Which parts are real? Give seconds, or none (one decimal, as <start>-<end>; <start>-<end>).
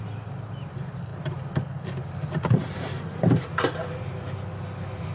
0.0-5.1